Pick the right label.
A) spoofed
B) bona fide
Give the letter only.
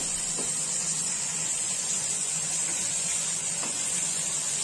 A